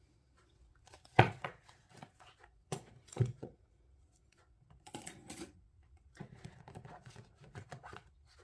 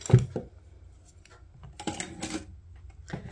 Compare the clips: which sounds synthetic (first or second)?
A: first